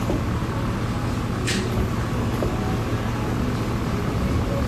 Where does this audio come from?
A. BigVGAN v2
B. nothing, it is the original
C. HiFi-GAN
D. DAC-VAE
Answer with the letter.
B